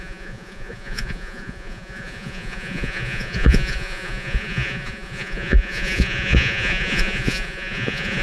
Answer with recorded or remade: remade